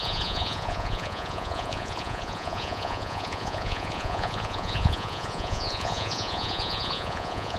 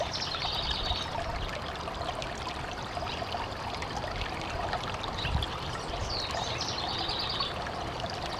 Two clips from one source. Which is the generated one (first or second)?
first